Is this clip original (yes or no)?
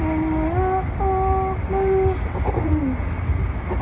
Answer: yes